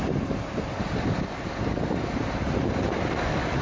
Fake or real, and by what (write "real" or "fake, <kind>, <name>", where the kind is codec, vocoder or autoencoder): real